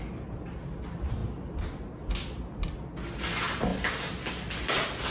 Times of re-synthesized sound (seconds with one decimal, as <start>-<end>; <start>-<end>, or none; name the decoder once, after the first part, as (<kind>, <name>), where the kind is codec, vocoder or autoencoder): none